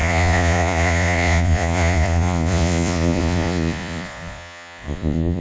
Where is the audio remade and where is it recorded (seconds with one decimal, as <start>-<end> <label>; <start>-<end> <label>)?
0.0-5.4 remade